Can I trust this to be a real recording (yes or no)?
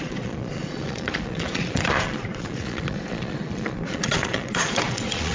no